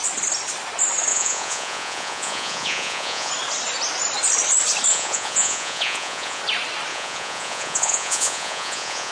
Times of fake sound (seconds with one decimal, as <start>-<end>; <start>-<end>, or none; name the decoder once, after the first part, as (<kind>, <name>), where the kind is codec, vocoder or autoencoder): 1.1-3.3 (vocoder, Vocos); 4.9-6.4; 6.9-9.1